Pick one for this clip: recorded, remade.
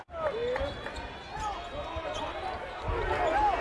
recorded